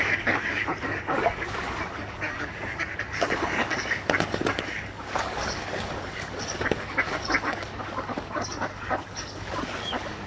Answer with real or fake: fake